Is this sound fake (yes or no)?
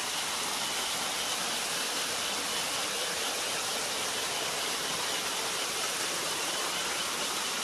no